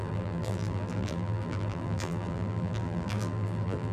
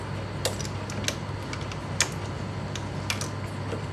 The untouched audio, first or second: second